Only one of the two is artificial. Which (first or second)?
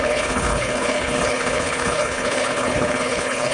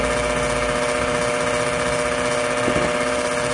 first